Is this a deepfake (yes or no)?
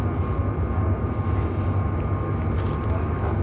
no